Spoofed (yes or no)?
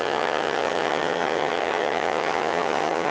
yes